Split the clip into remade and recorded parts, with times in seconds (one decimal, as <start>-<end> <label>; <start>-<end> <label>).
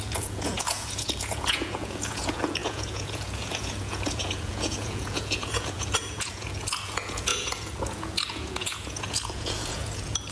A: 0.0-10.3 remade